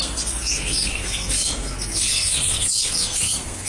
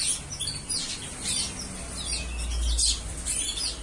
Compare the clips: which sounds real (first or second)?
second